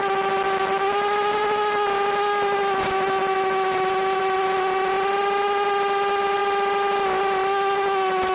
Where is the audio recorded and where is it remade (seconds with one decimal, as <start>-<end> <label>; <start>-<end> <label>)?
0.0-8.3 recorded